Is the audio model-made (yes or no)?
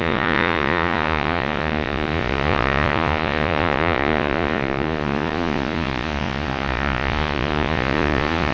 yes